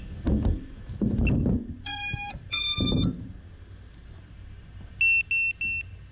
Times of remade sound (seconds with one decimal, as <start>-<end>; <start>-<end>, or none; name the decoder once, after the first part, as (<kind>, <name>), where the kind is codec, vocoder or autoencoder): none

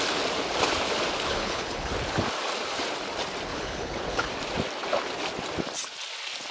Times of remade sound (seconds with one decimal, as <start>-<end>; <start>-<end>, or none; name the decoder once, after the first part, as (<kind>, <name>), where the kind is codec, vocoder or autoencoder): 1.3-1.9 (codec, HILCodec); 3.5-4.3